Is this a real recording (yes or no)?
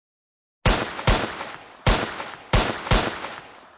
yes